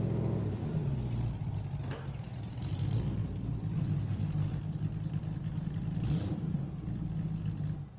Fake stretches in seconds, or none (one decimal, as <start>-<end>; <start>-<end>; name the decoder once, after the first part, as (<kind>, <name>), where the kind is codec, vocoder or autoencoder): 3.2-7.4 (vocoder, BigVGAN v2)